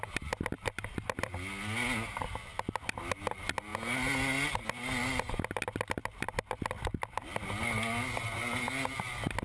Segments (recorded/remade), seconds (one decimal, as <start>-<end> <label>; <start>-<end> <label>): 0.0-9.4 recorded